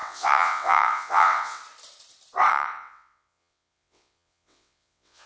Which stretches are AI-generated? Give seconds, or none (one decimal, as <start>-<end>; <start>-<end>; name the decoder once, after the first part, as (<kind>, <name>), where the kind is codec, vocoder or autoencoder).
0.0-1.6 (vocoder, WaveNeXt); 2.5-5.3